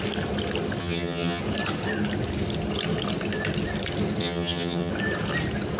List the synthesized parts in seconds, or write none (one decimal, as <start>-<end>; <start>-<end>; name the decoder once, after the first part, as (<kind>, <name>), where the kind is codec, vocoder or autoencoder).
0.8-1.4 (vocoder, HiFi-GAN); 4.2-4.9